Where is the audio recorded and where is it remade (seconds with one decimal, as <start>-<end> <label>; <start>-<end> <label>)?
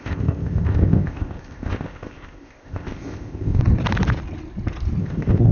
0.0-3.6 remade; 3.6-5.0 recorded; 5.0-5.5 remade